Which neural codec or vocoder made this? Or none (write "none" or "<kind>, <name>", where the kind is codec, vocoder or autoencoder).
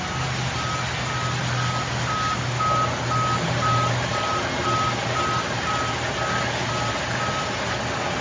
none